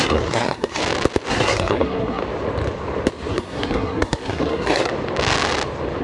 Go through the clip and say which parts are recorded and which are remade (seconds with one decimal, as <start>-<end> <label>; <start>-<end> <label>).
0.0-0.8 remade; 0.8-1.3 recorded; 1.3-2.2 remade; 2.2-3.3 recorded; 3.3-4.9 remade; 4.9-6.0 recorded